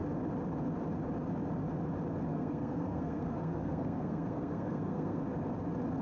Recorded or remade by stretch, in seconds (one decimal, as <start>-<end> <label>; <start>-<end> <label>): 0.0-2.3 recorded; 2.3-5.2 remade; 5.2-6.0 recorded